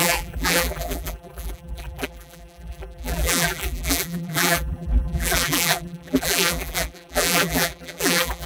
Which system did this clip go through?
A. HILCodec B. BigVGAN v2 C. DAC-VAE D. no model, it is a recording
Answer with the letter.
B